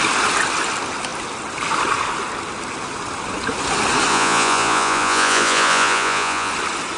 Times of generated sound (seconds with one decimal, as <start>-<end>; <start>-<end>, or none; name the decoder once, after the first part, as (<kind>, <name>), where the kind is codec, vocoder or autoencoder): 4.1-6.5 (vocoder, Vocos)